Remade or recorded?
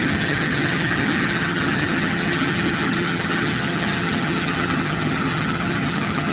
remade